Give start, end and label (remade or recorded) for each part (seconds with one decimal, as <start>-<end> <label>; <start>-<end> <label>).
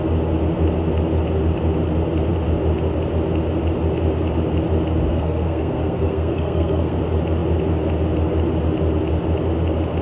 0.0-5.1 recorded; 5.1-7.0 remade; 7.0-10.0 recorded